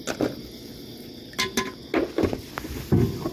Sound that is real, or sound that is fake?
real